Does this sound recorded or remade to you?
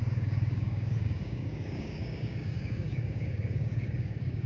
remade